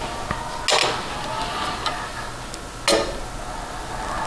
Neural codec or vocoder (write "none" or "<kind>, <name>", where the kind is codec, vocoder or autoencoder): none